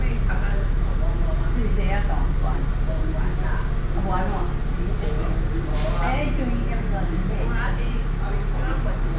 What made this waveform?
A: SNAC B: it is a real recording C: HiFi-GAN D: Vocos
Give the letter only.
B